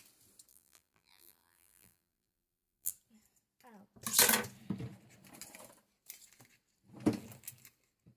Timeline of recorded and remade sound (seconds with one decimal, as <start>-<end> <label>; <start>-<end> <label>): 0.0-0.5 recorded; 0.5-2.9 remade; 2.9-8.2 recorded